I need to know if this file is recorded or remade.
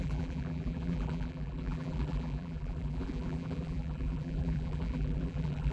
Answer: remade